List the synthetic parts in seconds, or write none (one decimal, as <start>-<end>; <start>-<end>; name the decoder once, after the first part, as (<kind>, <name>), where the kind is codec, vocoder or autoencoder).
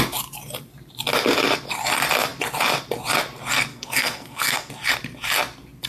3.7-4.7 (codec, SNAC)